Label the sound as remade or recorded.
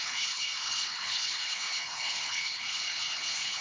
remade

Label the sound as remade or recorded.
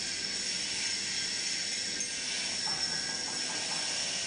recorded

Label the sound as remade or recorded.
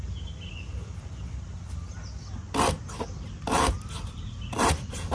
recorded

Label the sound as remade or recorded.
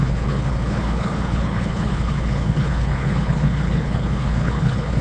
remade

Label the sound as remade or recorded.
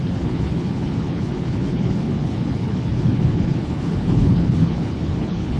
remade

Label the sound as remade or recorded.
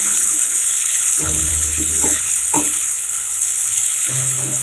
remade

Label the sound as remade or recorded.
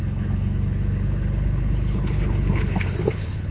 remade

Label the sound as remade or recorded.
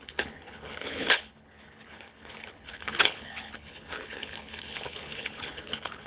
remade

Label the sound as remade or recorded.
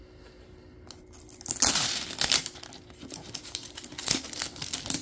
recorded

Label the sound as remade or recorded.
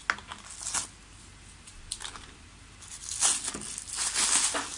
recorded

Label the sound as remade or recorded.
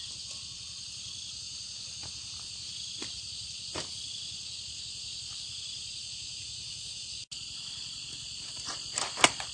recorded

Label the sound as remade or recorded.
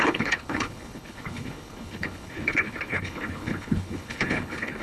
remade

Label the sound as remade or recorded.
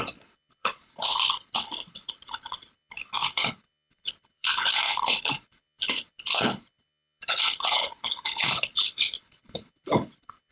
remade